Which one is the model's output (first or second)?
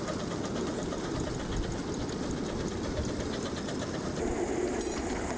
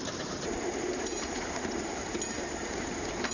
second